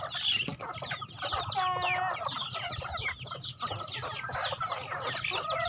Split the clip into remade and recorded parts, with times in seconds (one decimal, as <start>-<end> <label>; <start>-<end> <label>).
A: 0.0-5.7 recorded